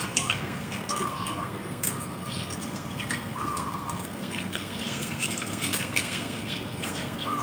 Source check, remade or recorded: remade